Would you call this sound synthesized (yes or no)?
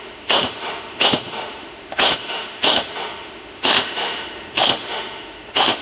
yes